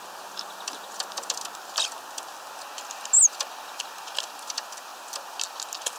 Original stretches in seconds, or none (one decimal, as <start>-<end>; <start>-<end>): 0.0-6.0